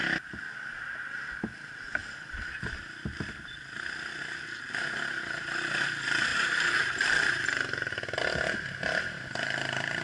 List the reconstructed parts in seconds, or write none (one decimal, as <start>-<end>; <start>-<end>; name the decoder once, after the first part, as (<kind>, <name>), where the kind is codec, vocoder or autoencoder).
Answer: 0.0-0.7 (vocoder, BigVGAN v2); 2.0-4.2; 6.3-8.4